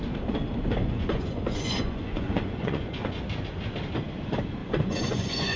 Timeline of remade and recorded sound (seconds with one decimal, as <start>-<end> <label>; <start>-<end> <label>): 0.0-0.8 recorded; 0.8-3.2 remade; 3.2-4.6 recorded; 4.6-5.6 remade